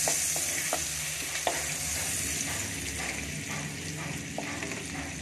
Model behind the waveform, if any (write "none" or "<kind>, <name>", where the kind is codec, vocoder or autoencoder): none